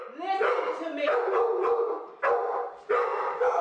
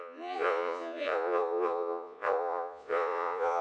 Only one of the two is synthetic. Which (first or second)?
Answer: second